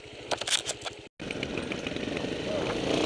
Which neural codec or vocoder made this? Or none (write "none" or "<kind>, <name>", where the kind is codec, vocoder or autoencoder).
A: none